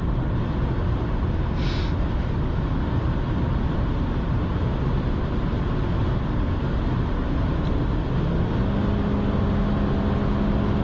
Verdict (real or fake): real